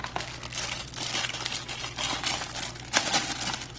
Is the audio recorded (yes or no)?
yes